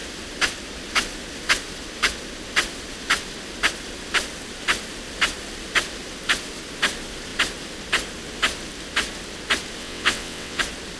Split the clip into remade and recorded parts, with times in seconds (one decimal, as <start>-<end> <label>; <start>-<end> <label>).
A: 0.0-9.8 recorded; 9.8-10.6 remade; 10.6-11.0 recorded